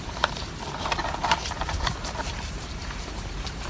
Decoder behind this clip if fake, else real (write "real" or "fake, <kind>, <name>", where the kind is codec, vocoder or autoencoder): fake, vocoder, BigVGAN v2